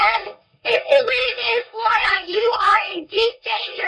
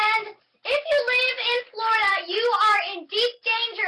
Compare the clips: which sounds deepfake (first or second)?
first